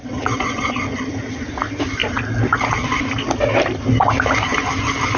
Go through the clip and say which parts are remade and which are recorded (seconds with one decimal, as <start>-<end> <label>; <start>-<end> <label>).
0.0-0.8 remade; 0.8-5.2 recorded